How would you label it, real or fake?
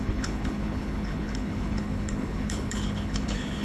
fake